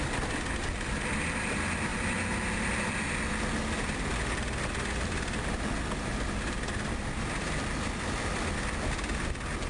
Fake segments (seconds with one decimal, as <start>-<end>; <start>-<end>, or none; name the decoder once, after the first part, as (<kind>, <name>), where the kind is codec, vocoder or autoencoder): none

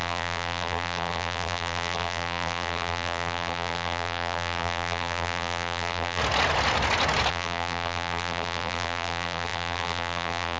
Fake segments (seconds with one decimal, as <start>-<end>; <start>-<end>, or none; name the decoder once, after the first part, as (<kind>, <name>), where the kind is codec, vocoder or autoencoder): 0.0-6.2 (vocoder, BigVGAN v2); 7.3-10.6

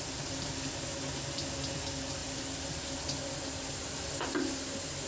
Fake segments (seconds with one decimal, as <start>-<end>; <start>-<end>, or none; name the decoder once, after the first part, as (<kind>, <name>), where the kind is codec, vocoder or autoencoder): 2.2-5.1 (vocoder, BigVGAN v2)

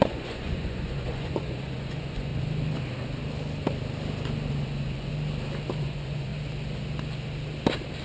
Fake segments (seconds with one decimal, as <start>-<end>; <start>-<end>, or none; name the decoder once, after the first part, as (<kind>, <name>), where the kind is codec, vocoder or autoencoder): 0.0-2.3 (vocoder, Vocos); 4.5-5.1; 5.8-6.3

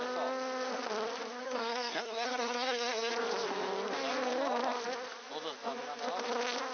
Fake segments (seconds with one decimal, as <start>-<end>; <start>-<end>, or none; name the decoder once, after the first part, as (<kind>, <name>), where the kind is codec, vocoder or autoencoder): 1.4-3.1 (codec, SNAC)